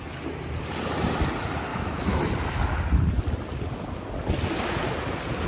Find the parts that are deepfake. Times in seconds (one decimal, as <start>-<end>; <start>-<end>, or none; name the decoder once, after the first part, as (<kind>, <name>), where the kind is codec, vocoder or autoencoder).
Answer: 1.7-2.2 (autoencoder, DAC-VAE)